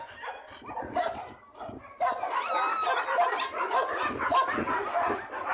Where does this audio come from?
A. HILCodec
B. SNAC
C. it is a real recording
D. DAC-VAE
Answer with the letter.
C